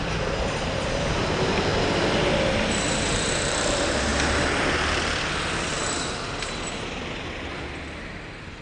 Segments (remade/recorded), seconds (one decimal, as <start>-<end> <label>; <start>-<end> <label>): 0.0-1.7 remade; 1.7-2.7 recorded; 2.7-4.1 remade; 4.1-8.0 recorded; 8.0-8.6 remade